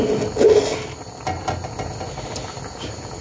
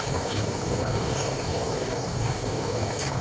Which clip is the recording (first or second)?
first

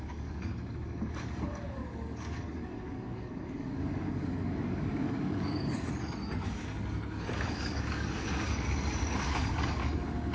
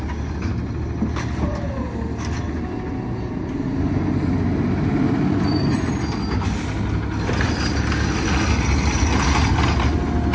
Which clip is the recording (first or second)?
second